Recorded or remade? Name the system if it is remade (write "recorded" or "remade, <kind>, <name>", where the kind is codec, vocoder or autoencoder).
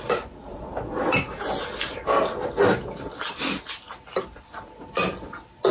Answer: recorded